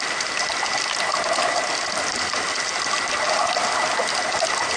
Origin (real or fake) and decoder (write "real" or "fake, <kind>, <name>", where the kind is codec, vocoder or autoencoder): real